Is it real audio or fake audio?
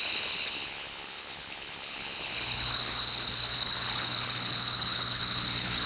fake